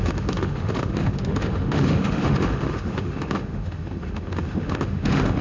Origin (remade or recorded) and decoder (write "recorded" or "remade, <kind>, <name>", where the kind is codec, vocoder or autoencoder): remade, autoencoder, DAC-VAE